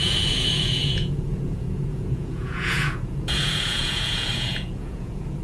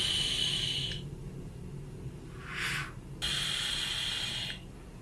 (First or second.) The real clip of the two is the second